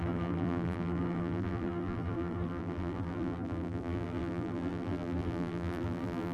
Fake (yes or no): yes